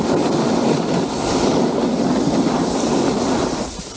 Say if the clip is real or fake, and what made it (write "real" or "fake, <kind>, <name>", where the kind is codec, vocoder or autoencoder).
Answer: real